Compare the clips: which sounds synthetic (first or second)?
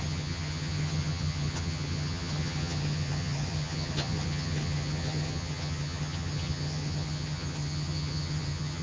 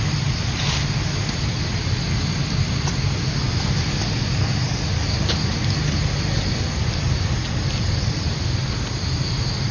first